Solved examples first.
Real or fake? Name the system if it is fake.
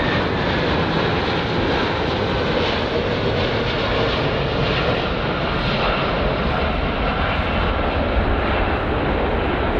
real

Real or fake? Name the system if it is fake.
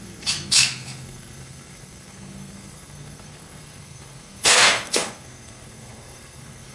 fake, codec, SNAC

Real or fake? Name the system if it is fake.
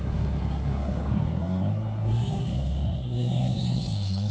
fake, codec, SNAC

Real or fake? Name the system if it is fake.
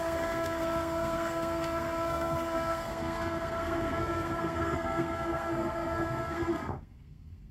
fake, codec, SNAC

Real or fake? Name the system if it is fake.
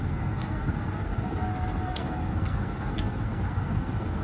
fake, codec, SNAC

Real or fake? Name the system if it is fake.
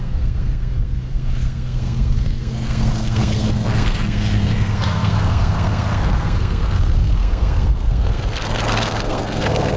fake, codec, SNAC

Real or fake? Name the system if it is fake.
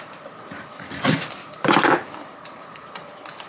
real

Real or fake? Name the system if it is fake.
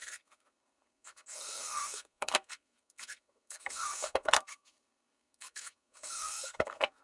fake, codec, SNAC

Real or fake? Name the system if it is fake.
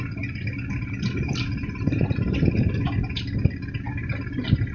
real